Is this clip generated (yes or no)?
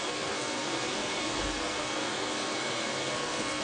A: yes